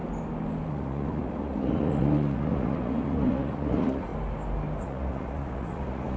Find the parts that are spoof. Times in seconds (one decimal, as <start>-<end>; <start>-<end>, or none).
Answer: 0.7-4.1; 4.8-6.2